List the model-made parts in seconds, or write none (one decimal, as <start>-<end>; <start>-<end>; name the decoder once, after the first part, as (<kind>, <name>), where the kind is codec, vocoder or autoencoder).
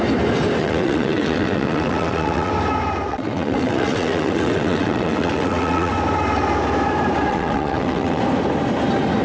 0.6-2.5 (vocoder, WaveNeXt); 3.1-5.9; 7.3-8.2